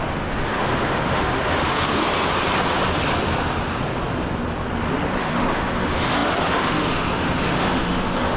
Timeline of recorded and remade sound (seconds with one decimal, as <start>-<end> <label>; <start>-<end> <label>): 0.0-2.0 remade; 2.0-5.2 recorded; 5.2-8.4 remade